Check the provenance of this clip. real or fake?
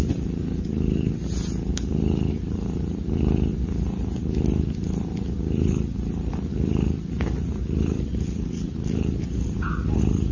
real